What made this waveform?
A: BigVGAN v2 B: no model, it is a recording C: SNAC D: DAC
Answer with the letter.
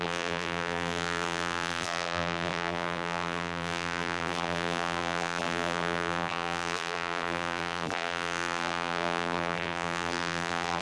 A